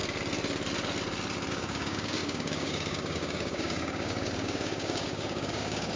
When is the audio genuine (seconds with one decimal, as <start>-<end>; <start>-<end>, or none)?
0.0-1.5